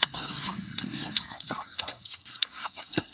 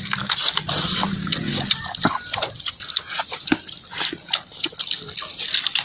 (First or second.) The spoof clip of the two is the first